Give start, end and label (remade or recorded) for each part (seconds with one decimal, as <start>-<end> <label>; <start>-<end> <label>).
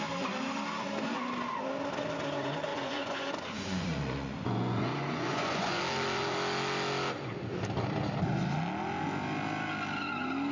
0.0-2.7 recorded; 2.7-5.8 remade; 5.8-10.5 recorded